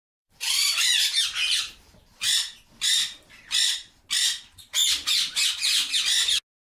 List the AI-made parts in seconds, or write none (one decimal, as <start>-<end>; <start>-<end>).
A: 0.0-4.0